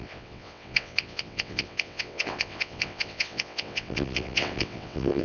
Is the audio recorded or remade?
remade